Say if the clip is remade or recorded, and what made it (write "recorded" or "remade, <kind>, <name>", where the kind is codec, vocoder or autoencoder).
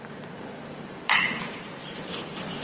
remade, vocoder, BigVGAN v2